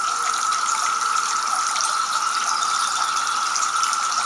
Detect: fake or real real